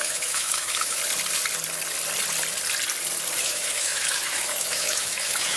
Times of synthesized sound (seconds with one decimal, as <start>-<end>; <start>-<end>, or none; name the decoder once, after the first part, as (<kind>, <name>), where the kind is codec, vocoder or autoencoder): 0.0-1.0 (autoencoder, DAC-VAE); 3.4-5.6